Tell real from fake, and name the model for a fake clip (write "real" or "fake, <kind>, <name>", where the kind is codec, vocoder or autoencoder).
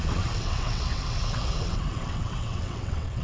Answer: fake, vocoder, WaveNeXt